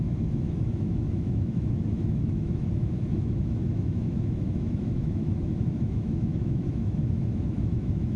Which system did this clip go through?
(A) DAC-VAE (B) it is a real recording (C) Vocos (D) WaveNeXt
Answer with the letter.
A